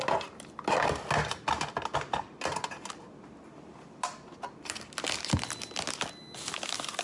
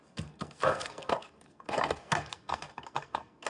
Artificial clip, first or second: second